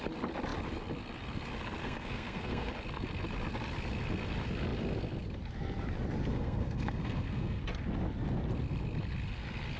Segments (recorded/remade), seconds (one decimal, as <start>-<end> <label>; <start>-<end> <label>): 0.0-1.8 recorded; 1.8-2.7 remade; 2.7-6.3 recorded; 6.3-7.6 remade; 7.6-9.8 recorded